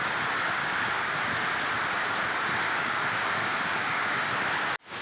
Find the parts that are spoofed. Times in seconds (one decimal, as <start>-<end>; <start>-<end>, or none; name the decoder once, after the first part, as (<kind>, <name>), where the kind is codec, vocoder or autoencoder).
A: 0.6-1.3 (codec, DAC); 2.6-4.3